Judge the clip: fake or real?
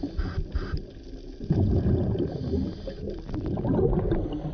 real